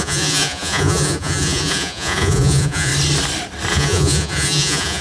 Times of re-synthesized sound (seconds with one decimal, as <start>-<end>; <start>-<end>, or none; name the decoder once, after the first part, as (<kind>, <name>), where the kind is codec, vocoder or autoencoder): 0.0-2.9 (vocoder, Vocos); 3.7-5.0